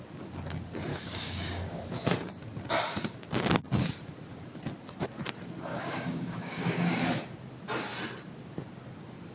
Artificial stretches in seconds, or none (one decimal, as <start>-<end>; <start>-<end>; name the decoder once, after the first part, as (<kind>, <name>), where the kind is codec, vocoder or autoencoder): 0.9-1.8 (codec, DAC); 5.7-7.0